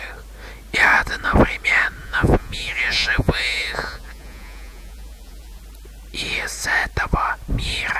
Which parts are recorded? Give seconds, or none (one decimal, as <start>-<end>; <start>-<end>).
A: 0.0-2.0; 5.6-8.0